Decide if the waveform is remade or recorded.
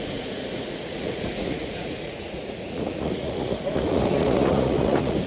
remade